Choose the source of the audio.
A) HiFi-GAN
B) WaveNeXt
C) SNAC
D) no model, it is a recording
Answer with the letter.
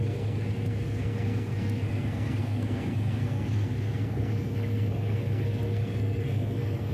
C